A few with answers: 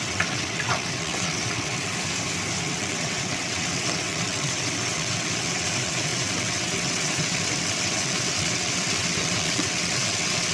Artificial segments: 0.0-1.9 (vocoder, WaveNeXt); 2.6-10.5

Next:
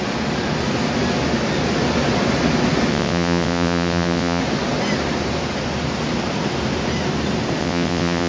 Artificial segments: 2.9-4.4 (vocoder, WaveNeXt); 7.6-8.3